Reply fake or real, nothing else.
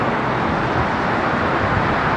real